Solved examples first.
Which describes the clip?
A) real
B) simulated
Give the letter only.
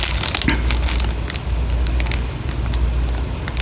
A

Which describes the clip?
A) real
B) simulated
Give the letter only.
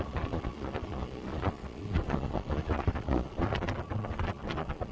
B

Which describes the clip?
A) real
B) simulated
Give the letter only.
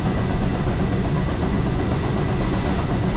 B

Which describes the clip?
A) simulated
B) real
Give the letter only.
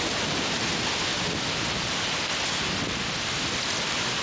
B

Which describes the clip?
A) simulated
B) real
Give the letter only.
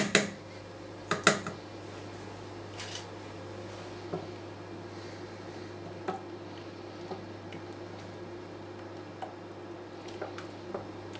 B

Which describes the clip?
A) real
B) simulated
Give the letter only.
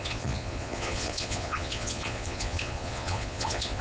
B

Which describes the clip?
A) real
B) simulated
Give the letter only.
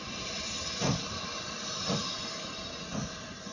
A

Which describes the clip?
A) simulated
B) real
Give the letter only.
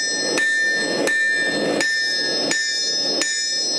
B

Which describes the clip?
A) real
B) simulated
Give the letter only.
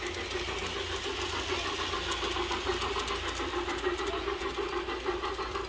A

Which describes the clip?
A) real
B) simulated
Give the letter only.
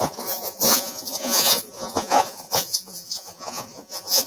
B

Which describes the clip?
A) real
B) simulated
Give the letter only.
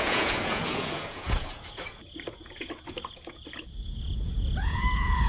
B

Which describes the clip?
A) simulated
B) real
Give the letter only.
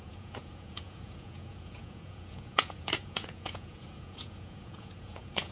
A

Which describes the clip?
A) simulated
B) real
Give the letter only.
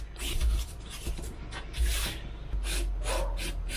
B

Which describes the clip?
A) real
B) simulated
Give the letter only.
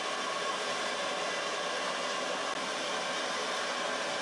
A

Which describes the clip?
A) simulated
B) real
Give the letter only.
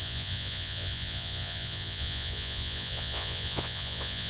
A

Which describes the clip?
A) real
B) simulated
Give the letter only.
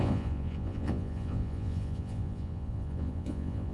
B